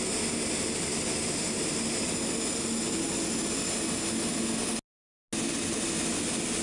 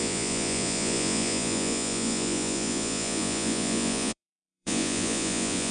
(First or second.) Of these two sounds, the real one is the first